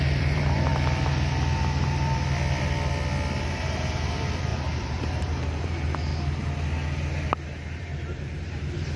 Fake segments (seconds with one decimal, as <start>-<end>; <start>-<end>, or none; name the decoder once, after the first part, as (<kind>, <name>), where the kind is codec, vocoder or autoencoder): 0.0-0.7 (vocoder, BigVGAN v2); 3.4-6.1; 7.8-9.0